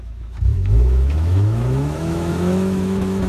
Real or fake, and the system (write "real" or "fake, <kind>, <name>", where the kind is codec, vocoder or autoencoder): fake, autoencoder, DAC-VAE